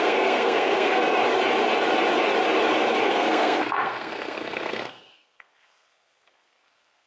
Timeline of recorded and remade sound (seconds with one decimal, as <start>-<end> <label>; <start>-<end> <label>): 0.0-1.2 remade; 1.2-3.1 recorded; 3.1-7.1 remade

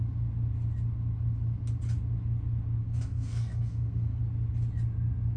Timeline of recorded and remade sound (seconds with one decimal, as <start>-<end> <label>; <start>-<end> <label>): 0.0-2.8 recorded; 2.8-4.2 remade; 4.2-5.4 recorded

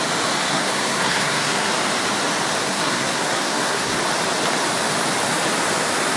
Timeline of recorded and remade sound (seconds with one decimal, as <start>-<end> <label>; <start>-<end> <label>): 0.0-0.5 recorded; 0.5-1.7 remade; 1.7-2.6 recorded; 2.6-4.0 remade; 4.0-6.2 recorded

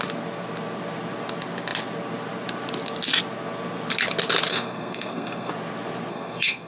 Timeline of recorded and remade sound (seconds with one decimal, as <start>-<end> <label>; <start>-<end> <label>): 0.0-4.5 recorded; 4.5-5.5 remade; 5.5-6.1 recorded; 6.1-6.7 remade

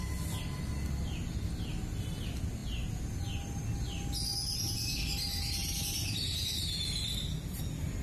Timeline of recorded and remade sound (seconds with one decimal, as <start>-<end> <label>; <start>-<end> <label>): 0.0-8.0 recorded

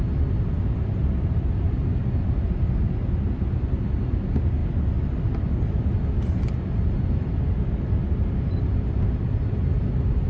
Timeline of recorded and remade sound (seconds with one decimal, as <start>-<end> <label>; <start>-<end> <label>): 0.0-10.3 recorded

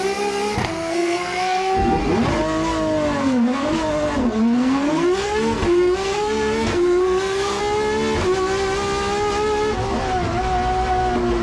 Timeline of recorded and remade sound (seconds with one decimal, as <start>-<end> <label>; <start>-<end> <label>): 0.0-0.6 recorded; 0.6-2.0 remade; 2.0-3.2 recorded; 3.2-3.8 remade; 3.8-4.2 recorded; 4.2-7.6 remade; 7.6-11.4 recorded